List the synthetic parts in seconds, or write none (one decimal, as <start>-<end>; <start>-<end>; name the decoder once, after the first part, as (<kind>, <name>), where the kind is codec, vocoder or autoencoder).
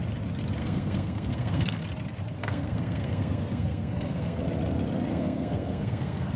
0.6-1.8 (codec, SNAC); 2.4-4.4; 5.1-6.4